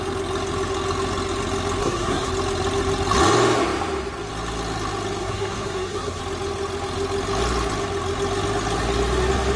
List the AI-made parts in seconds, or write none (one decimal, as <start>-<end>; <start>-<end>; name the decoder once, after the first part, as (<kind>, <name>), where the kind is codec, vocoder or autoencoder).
1.8-2.3 (codec, SNAC); 5.2-6.2